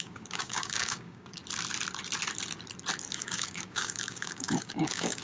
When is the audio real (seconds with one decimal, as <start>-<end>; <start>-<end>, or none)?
1.4-3.1